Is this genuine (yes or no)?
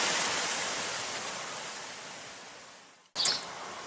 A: yes